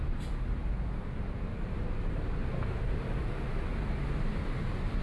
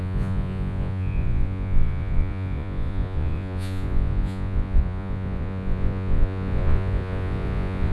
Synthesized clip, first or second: second